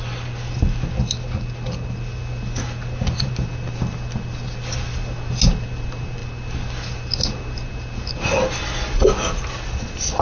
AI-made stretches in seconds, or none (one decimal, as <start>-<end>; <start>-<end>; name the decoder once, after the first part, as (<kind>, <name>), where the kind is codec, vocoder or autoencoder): none